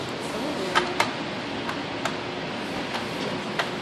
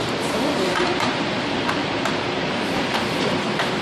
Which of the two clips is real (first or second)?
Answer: first